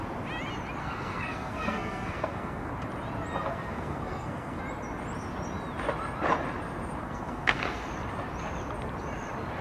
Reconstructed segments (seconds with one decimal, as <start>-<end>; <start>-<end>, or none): 0.8-2.7; 3.5-4.6; 7.0-7.9